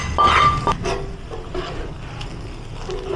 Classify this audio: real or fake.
real